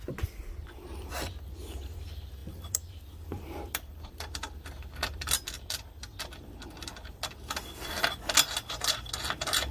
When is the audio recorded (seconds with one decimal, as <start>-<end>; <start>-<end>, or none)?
6.1-9.7